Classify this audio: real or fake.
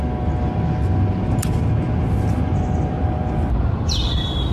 real